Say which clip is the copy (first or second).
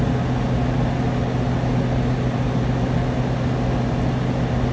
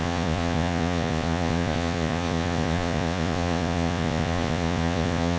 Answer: second